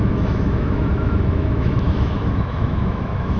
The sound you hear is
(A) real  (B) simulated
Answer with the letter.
B